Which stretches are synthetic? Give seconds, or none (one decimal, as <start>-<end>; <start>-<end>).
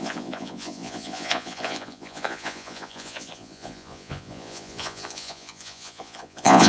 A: 0.0-6.7